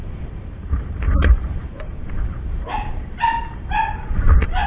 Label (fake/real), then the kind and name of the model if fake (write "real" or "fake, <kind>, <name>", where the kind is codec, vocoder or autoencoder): fake, vocoder, BigVGAN v2